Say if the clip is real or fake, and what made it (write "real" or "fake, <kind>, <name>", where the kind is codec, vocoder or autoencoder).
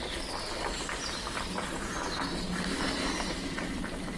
real